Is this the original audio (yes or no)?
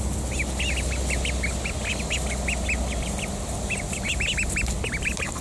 yes